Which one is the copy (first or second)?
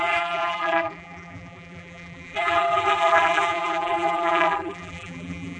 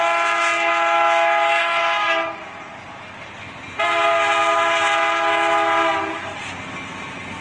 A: first